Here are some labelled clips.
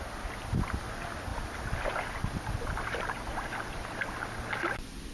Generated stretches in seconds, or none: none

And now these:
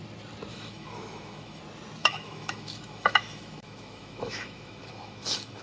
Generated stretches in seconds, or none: 0.5-1.6 (autoencoder, DAC-VAE); 2.0-5.6

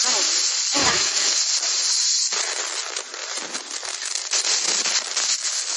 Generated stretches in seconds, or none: 0.8-1.4 (autoencoder, DAC-VAE)

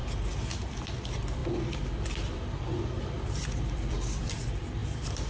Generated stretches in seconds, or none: 0.6-4.8 (vocoder, BigVGAN v2)

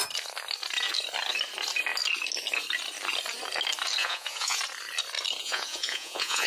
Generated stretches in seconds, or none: 4.0-4.6 (vocoder, Vocos); 5.4-6.5

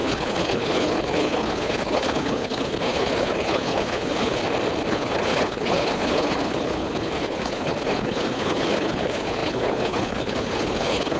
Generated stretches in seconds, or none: 0.0-4.4 (codec, HILCodec); 4.9-11.2

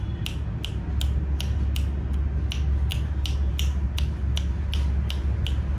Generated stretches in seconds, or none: none

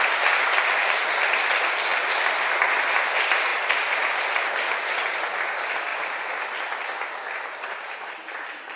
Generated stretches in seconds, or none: 3.5-4.3 (vocoder, BigVGAN v2)